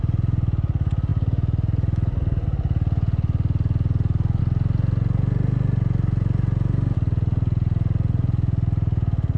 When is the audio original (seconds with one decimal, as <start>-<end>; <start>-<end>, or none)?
0.0-9.4